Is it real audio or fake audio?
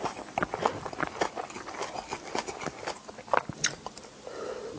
real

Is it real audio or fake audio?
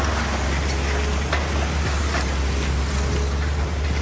real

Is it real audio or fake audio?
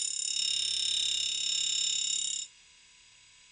real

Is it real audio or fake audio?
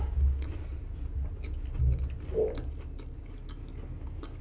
real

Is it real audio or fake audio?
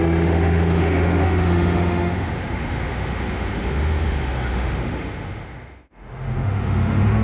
fake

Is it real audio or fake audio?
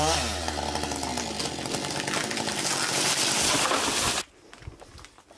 real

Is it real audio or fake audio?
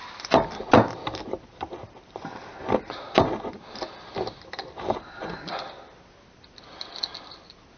real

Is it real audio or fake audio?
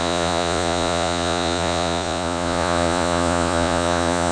fake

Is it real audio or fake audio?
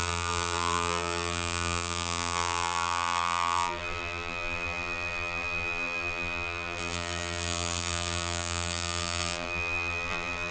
fake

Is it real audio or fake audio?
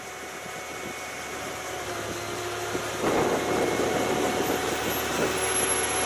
real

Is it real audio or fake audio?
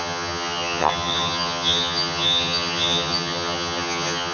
fake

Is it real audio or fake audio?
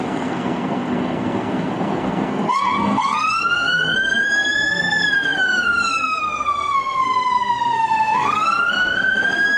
fake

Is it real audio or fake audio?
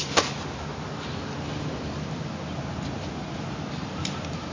real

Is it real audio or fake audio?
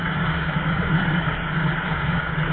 fake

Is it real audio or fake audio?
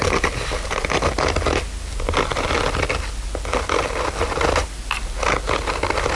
real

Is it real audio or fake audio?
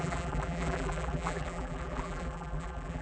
fake